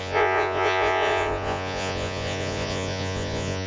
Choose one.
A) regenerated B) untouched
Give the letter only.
A